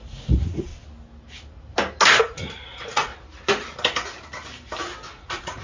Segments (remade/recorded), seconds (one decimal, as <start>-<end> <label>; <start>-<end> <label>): 0.0-0.7 remade; 0.7-2.2 recorded; 2.2-3.1 remade; 3.1-5.1 recorded; 5.1-5.6 remade